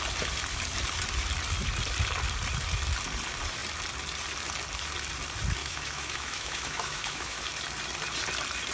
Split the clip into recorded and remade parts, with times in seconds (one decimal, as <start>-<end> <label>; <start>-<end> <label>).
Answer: 0.0-5.6 recorded; 5.6-7.4 remade; 7.4-8.7 recorded